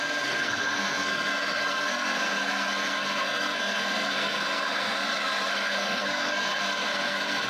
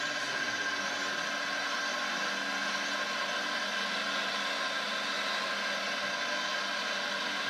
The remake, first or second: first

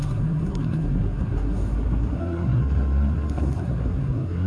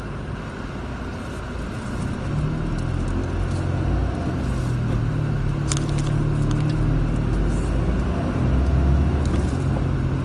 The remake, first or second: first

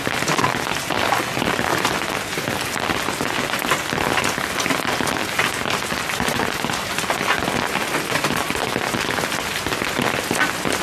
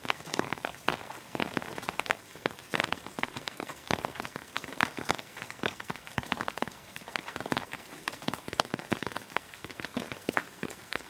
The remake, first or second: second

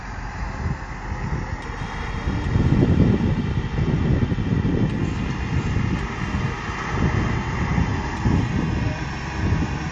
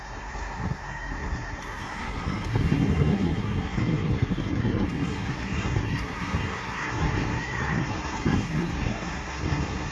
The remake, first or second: second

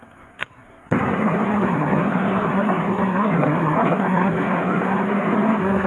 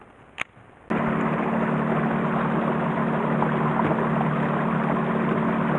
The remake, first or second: first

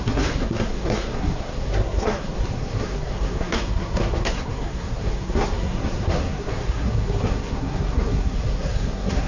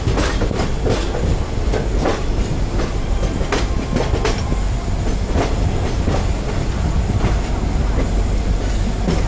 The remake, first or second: first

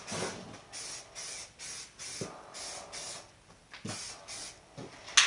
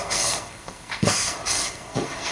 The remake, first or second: second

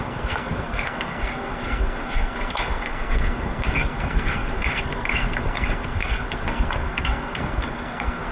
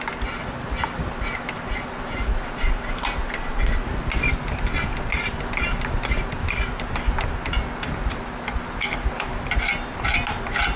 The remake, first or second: first